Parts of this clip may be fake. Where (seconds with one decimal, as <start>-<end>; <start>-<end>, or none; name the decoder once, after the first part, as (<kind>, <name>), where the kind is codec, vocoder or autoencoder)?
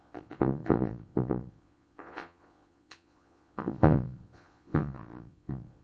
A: 0.0-5.8 (vocoder, Vocos)